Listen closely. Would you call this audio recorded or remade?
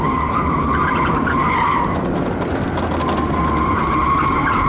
recorded